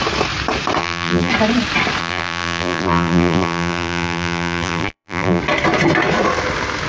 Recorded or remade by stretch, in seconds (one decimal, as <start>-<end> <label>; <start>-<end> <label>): 0.0-0.8 recorded; 0.8-1.3 remade; 1.3-2.0 recorded; 2.0-5.4 remade; 5.4-6.9 recorded